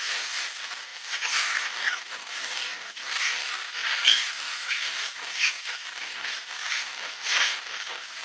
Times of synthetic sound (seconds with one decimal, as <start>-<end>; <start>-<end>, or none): 0.0-8.2